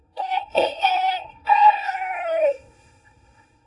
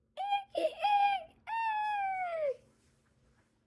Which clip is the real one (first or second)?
second